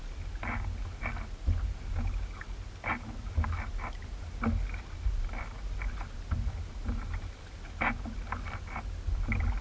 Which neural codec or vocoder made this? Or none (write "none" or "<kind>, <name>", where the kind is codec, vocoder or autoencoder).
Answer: none